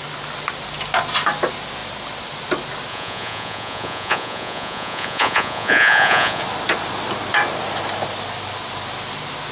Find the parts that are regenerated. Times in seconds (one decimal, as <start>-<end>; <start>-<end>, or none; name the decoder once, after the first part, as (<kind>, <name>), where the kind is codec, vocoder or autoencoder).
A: 2.9-6.4 (vocoder, Vocos)